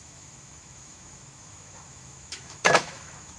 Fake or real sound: fake